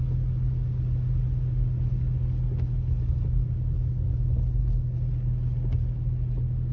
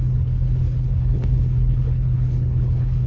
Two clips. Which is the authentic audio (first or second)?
first